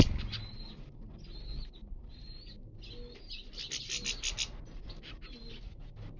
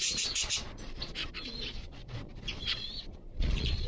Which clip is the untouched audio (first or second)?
first